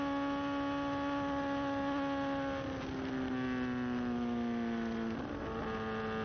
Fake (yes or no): no